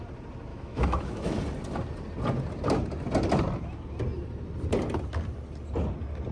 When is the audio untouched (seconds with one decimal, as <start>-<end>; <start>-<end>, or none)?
0.0-0.5; 1.4-6.3